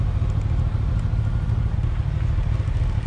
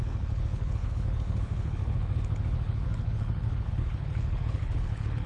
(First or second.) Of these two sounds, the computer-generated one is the second